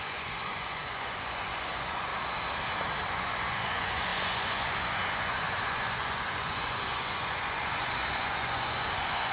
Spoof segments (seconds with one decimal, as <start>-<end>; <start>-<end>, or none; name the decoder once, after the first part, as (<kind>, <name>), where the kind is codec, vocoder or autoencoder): 0.0-2.1 (vocoder, Vocos); 3.1-9.3